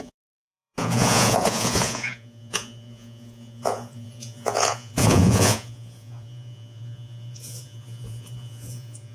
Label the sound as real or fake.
fake